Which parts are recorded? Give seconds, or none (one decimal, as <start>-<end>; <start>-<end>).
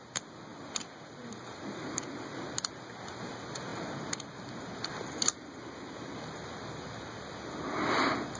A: 0.0-8.4